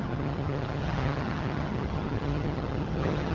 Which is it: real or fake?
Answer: fake